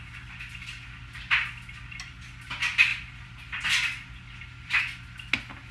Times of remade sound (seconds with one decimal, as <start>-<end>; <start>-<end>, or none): none